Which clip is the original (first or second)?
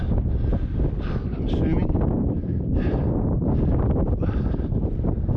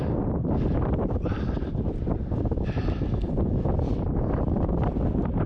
first